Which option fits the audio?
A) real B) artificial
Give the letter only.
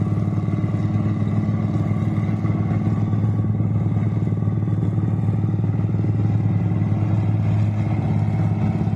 A